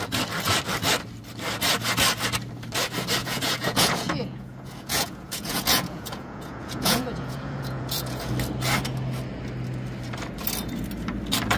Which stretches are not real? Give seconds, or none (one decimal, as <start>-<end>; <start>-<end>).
3.2-8.3